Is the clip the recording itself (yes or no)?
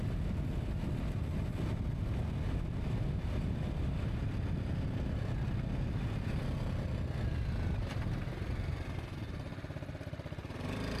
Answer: yes